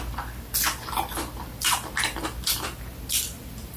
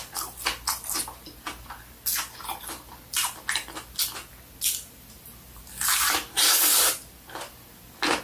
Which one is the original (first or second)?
second